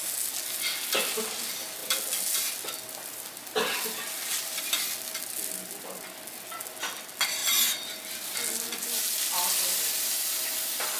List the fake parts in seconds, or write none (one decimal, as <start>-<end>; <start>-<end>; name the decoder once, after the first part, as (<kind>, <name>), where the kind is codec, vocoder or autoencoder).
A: none